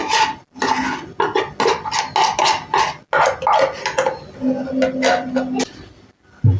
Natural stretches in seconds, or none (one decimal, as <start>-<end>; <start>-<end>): 0.0-6.6